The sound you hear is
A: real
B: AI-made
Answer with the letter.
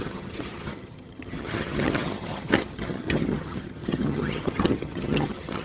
B